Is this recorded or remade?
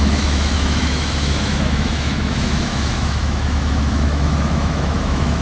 remade